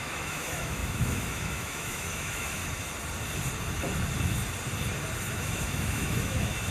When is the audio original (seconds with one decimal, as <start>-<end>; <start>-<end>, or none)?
2.6-5.3